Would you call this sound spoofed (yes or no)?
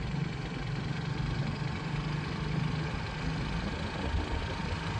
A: no